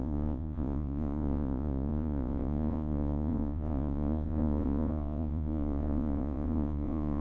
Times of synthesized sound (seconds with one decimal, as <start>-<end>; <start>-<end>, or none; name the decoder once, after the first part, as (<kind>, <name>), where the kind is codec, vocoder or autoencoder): 0.0-7.2 (vocoder, Vocos)